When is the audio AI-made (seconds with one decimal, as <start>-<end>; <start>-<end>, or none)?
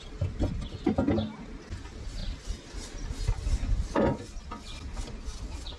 none